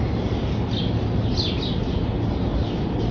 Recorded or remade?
recorded